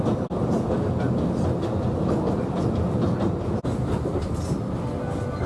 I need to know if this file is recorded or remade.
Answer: recorded